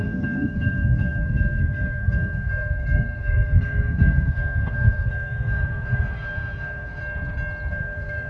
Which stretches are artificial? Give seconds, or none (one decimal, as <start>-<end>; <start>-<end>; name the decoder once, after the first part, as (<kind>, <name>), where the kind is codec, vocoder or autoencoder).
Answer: 0.0-7.0 (codec, SNAC); 7.7-8.3